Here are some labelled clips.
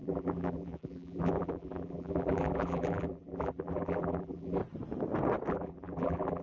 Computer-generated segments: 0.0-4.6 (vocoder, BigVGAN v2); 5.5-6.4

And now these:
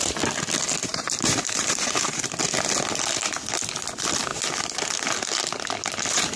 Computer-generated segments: 0.9-2.2 (vocoder, BigVGAN v2)

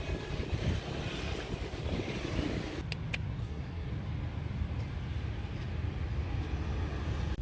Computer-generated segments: 3.4-3.9 (codec, SNAC)